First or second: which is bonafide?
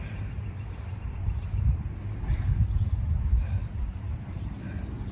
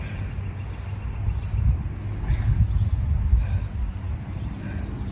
second